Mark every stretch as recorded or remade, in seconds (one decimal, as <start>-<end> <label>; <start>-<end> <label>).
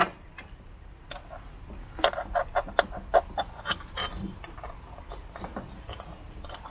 0.0-6.7 recorded